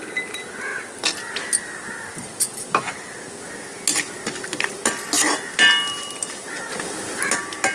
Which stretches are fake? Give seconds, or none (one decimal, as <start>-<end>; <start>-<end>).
none